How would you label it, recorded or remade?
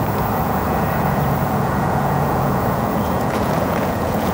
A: remade